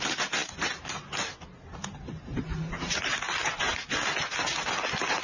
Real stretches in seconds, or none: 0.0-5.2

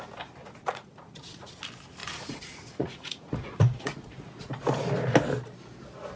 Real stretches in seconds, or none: 0.0-0.4; 1.5-2.0; 4.4-6.2

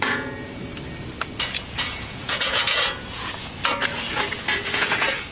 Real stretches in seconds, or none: 0.6-1.2